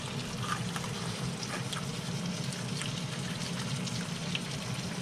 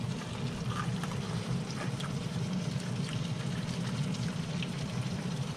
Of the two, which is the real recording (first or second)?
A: first